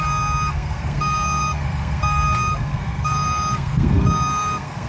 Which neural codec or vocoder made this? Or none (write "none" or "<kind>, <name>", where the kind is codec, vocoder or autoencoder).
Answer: codec, SNAC